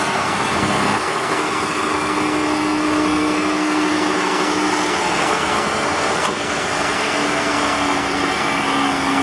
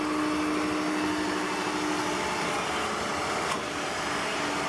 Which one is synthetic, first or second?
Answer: first